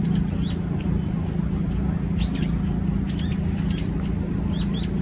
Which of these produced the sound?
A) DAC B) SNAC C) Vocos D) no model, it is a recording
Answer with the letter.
D